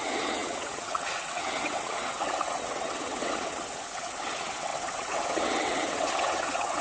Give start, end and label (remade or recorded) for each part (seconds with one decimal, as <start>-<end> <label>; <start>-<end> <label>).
0.0-6.8 remade